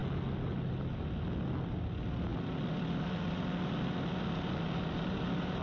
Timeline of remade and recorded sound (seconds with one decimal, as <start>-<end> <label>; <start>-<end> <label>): 0.0-2.3 recorded; 2.3-3.2 remade; 3.2-5.6 recorded